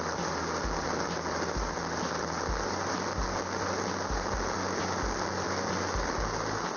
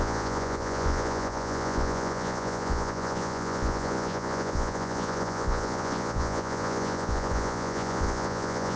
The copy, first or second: second